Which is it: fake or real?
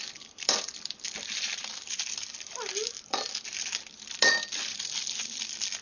fake